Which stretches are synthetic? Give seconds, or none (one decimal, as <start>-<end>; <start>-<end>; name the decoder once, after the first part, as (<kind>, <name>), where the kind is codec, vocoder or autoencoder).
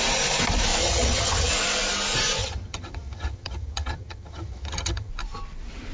0.8-1.5 (vocoder, HiFi-GAN); 2.4-5.1